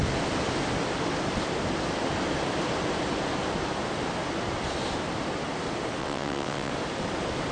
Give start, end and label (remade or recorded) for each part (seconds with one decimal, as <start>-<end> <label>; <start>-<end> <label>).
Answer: 0.0-6.0 recorded; 6.0-6.7 remade; 6.7-7.5 recorded